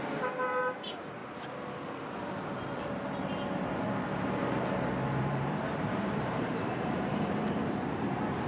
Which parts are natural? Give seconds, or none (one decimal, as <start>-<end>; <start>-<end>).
1.2-5.2